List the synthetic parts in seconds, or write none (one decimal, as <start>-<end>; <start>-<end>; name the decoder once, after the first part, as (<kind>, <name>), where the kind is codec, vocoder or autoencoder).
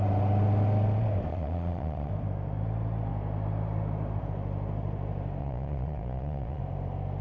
1.3-2.1 (vocoder, Vocos); 5.4-6.6